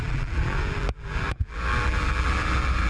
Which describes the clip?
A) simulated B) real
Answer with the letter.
A